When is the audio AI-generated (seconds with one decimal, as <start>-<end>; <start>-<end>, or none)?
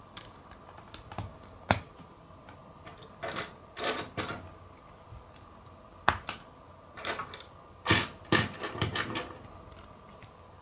none